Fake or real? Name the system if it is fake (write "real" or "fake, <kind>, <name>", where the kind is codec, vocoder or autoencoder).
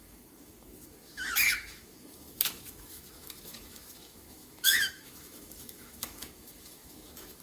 fake, autoencoder, DAC-VAE